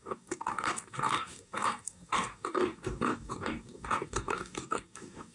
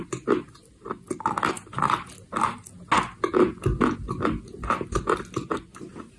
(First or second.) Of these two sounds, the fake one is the first